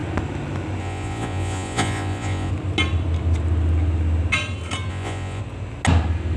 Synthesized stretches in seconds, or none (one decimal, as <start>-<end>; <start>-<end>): 0.8-2.5; 4.9-5.4